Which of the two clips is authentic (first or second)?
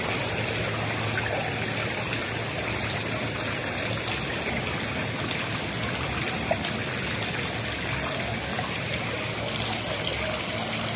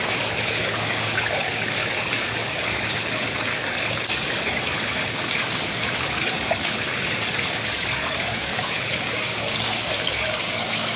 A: first